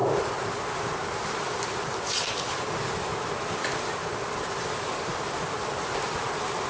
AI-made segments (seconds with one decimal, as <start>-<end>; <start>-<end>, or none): none